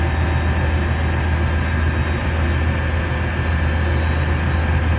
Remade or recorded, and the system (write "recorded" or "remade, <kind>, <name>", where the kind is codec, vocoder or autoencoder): recorded